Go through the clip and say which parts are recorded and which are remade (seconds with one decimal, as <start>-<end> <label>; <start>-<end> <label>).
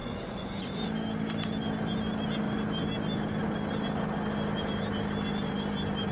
0.0-0.6 remade; 0.6-6.1 recorded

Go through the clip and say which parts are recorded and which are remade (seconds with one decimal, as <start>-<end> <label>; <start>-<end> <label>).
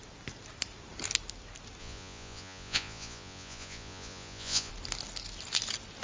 0.0-1.8 recorded; 1.8-4.7 remade; 4.7-6.0 recorded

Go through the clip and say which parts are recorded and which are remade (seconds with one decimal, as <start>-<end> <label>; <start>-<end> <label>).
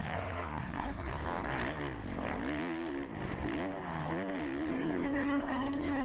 0.0-1.1 remade; 1.1-4.7 recorded; 4.7-6.0 remade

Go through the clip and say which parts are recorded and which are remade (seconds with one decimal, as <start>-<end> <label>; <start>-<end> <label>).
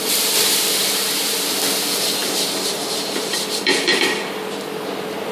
0.0-5.3 remade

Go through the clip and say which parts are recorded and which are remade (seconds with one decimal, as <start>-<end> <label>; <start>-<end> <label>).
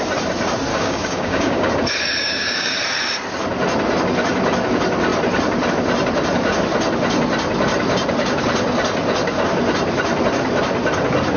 0.0-0.7 recorded; 0.7-1.7 remade; 1.7-2.2 recorded; 2.2-2.8 remade; 2.8-11.4 recorded